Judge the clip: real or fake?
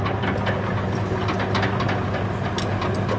real